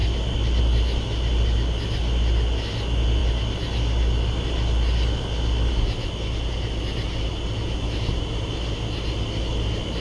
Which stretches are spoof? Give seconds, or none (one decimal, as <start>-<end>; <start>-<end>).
none